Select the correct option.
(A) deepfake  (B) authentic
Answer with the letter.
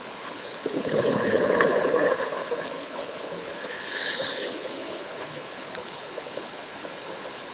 A